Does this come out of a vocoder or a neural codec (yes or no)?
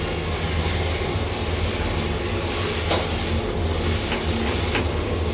no